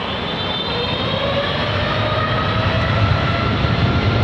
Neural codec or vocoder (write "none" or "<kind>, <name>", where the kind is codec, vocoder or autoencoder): none